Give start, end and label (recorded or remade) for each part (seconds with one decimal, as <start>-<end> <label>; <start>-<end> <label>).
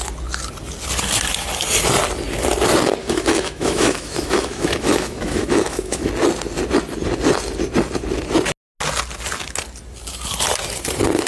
0.0-3.0 recorded; 3.0-6.1 remade; 6.1-11.3 recorded